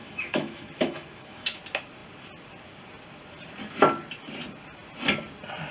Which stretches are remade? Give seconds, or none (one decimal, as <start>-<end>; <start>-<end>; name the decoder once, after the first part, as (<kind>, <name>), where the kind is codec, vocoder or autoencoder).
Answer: 0.0-1.6 (autoencoder, DAC-VAE)